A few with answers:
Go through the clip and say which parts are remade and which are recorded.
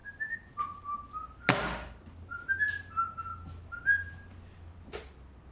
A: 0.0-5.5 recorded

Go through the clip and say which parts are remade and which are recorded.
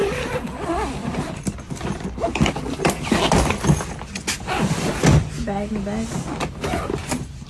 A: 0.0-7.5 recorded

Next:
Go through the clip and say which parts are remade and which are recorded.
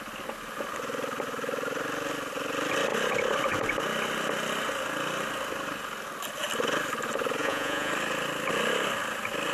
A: 0.0-7.4 recorded; 7.4-7.9 remade; 7.9-9.5 recorded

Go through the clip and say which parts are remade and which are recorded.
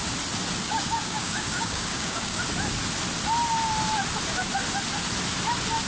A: 0.0-0.6 recorded; 0.6-2.4 remade; 2.4-5.9 recorded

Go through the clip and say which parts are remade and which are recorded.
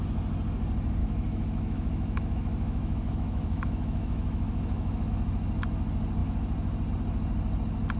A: 0.0-1.0 recorded; 1.0-5.1 remade; 5.1-8.0 recorded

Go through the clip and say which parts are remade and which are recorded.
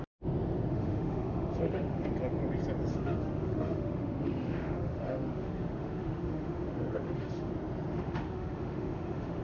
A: 0.0-0.7 recorded; 0.7-2.1 remade; 2.1-2.9 recorded; 2.9-7.5 remade; 7.5-7.9 recorded; 7.9-9.4 remade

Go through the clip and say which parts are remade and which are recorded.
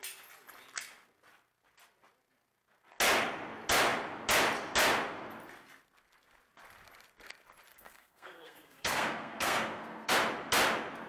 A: 0.0-7.7 recorded; 7.7-10.1 remade; 10.1-11.1 recorded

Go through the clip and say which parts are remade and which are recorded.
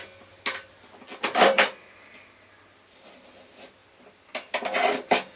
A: 0.0-1.1 recorded; 1.1-1.9 remade; 1.9-5.4 recorded